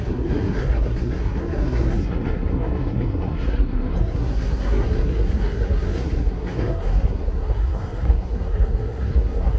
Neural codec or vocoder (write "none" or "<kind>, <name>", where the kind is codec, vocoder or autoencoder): codec, SNAC